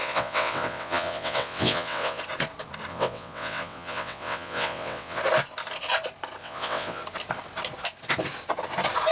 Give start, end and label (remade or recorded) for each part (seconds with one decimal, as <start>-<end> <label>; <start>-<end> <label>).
0.0-2.2 remade; 2.2-2.9 recorded; 2.9-5.2 remade; 5.2-6.4 recorded; 6.4-7.0 remade; 7.0-9.1 recorded